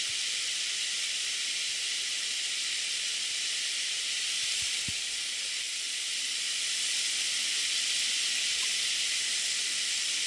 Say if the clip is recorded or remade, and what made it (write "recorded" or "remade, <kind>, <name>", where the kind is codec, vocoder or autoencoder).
remade, vocoder, BigVGAN v2